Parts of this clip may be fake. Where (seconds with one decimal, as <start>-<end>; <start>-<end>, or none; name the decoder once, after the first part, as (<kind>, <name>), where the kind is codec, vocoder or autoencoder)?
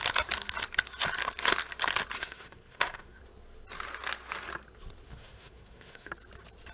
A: 2.2-3.2 (codec, SNAC); 5.1-6.1